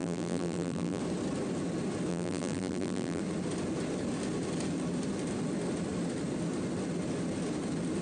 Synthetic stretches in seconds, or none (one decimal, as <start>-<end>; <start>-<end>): 0.0-1.0; 2.1-3.2